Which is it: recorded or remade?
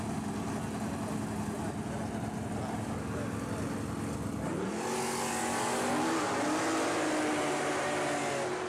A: recorded